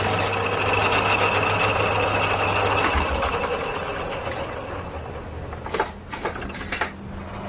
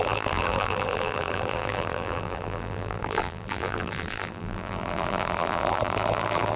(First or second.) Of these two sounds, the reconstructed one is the second